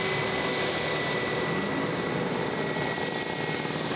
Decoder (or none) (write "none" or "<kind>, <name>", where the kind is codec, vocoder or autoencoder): none